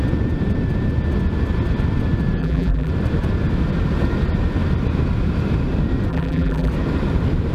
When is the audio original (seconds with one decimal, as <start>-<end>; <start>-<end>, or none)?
0.0-2.4; 2.9-6.1; 6.7-7.5